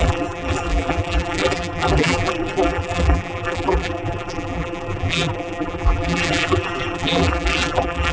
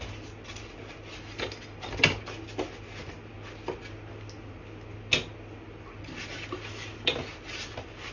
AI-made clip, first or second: first